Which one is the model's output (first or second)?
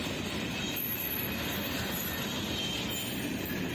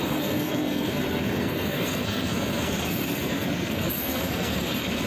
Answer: second